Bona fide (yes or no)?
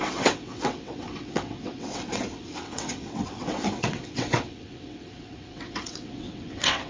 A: no